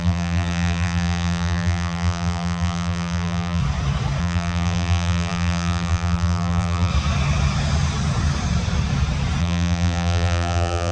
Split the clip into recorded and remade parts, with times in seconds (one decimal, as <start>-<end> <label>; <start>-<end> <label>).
0.0-3.6 remade; 3.6-4.2 recorded; 4.2-6.9 remade; 6.9-9.4 recorded; 9.4-10.9 remade